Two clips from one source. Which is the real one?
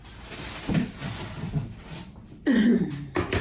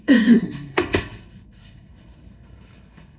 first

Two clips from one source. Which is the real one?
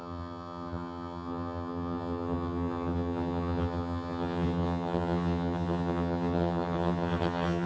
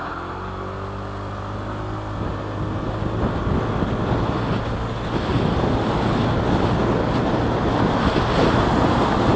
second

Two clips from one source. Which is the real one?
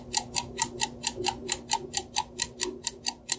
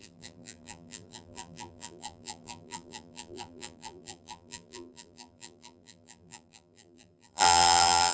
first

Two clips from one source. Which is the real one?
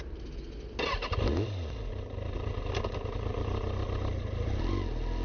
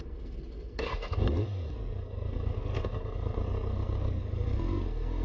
first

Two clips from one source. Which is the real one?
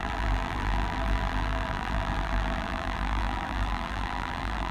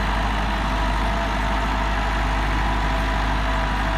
second